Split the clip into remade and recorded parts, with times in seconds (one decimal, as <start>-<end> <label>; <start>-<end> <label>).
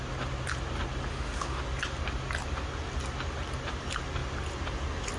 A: 0.0-1.1 recorded; 1.1-1.6 remade; 1.6-5.2 recorded